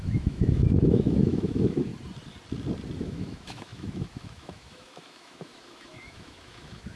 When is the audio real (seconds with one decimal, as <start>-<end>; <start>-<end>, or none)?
1.9-3.0